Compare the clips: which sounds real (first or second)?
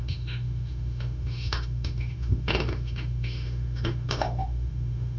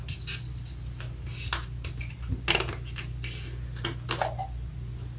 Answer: second